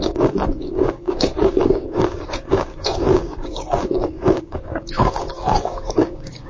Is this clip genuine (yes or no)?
no